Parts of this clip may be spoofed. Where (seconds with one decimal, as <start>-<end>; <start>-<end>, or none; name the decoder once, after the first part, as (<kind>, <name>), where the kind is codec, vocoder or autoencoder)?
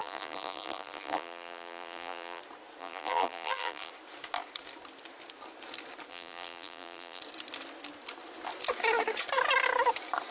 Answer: 0.0-2.4 (vocoder, BigVGAN v2); 2.8-3.9; 6.1-7.2